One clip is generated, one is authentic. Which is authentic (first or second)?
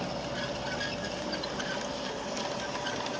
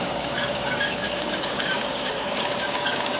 first